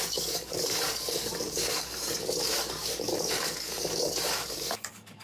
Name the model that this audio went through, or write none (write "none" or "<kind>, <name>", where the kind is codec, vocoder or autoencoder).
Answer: codec, DAC